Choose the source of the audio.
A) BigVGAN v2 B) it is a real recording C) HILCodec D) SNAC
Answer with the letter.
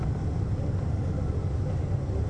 B